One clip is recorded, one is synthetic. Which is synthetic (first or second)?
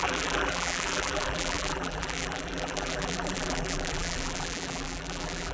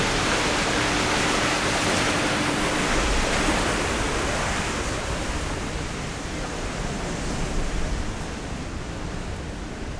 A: first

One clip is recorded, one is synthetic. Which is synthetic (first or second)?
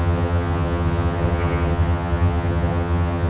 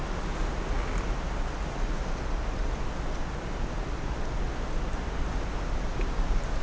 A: first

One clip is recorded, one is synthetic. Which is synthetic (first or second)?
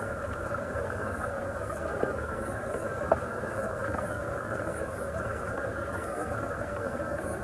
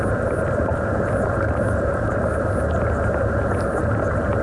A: first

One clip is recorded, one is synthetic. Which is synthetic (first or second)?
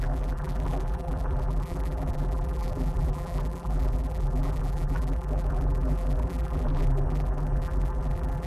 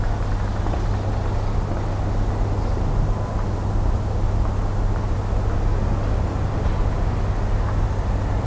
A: first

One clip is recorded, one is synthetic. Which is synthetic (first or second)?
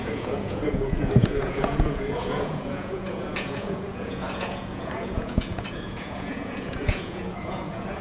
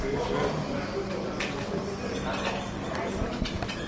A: first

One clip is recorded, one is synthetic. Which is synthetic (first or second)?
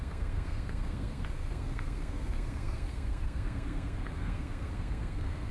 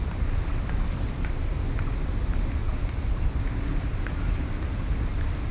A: first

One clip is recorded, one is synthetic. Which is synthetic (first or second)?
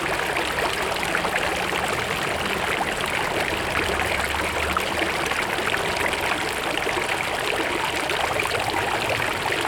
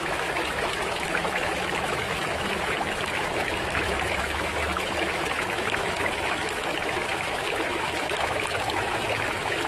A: second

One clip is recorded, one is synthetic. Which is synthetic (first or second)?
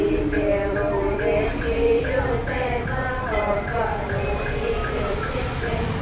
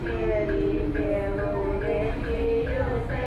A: first